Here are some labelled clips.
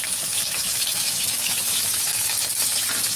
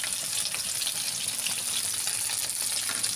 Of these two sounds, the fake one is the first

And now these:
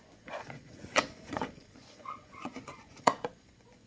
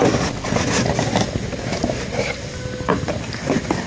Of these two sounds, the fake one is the first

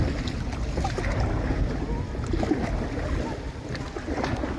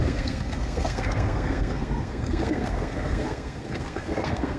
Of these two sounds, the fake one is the second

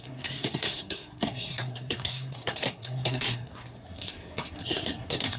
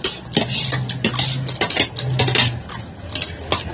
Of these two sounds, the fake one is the first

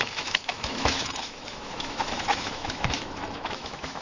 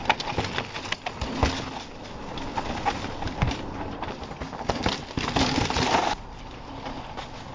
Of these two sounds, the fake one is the first